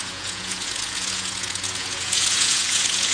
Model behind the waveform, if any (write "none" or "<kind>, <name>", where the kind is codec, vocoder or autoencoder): vocoder, Vocos